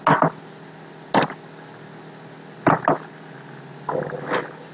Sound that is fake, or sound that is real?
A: real